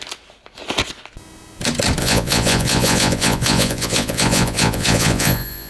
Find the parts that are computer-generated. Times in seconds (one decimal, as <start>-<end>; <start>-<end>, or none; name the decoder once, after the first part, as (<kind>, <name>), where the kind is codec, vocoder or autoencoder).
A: 2.0-5.7 (vocoder, Vocos)